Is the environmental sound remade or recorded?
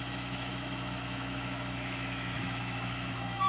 remade